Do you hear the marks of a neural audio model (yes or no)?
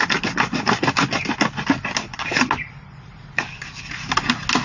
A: no